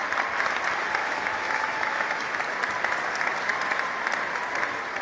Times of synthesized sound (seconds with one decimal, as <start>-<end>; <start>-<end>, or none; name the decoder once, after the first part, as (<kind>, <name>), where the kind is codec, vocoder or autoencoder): 1.0-2.3 (autoencoder, DAC-VAE)